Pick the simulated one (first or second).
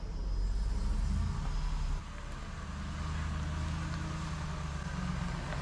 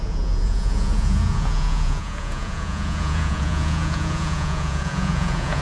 second